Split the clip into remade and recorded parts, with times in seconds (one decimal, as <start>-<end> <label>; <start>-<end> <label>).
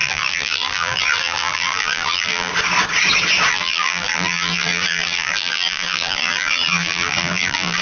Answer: 0.0-2.5 remade; 2.5-3.5 recorded; 3.5-7.8 remade